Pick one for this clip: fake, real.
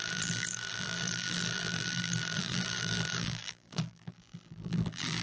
fake